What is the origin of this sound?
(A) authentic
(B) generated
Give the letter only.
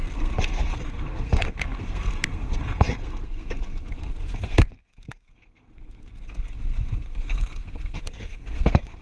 B